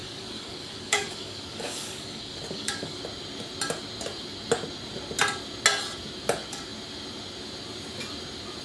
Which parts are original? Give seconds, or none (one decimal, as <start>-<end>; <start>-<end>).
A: 3.0-8.6